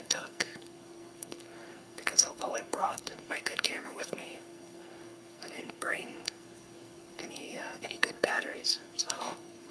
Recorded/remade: remade